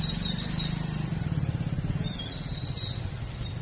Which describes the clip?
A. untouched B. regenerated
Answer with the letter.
A